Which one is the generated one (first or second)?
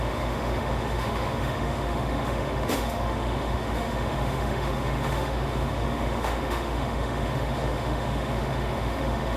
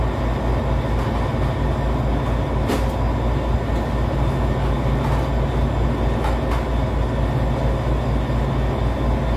first